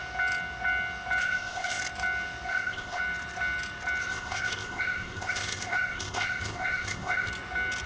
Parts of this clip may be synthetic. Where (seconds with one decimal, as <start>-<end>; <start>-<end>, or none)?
1.2-1.8; 2.5-3.0; 4.0-7.3